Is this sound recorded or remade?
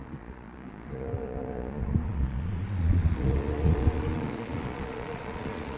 remade